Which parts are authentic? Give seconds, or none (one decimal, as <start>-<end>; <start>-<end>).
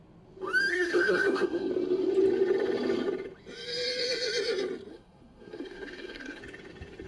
0.0-0.7; 1.7-4.9; 6.4-7.1